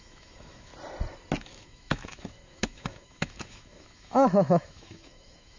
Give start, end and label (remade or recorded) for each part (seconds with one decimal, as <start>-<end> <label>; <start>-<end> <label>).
0.0-0.7 remade; 0.7-1.4 recorded; 1.4-5.6 remade